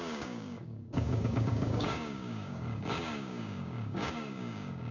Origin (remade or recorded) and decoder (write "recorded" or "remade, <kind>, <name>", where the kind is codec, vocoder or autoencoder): remade, codec, DAC